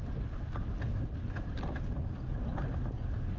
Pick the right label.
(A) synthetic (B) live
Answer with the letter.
B